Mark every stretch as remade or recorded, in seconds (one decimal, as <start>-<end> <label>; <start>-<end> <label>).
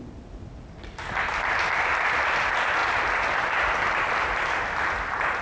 0.0-5.4 recorded